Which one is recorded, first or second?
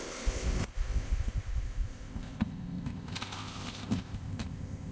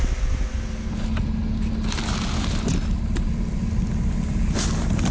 second